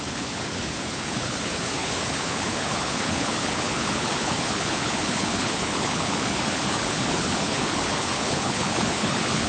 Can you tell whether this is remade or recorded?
remade